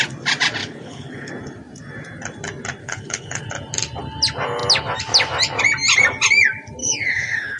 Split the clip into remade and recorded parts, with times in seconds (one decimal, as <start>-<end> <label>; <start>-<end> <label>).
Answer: 0.0-0.6 recorded; 0.6-1.3 remade; 1.3-2.8 recorded; 2.8-3.4 remade; 3.4-6.8 recorded; 6.8-7.6 remade